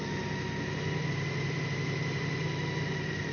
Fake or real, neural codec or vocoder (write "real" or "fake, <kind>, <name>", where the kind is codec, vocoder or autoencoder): real